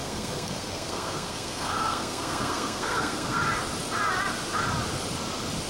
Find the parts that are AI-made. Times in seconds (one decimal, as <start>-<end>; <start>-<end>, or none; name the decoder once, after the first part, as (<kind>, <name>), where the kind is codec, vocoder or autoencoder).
0.0-3.4 (codec, SNAC)